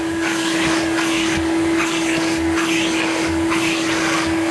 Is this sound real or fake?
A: fake